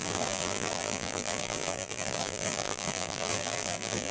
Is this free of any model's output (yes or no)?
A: no